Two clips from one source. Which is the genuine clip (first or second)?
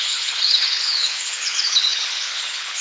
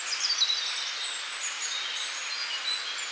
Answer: second